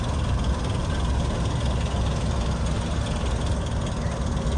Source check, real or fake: real